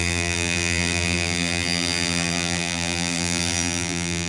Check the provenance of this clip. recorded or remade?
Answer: remade